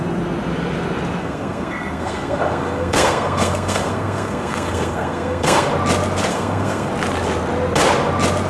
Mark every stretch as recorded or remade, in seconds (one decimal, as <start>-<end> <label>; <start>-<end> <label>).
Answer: 0.0-1.2 recorded; 1.2-5.7 remade; 5.7-6.3 recorded; 6.3-6.9 remade; 6.9-8.5 recorded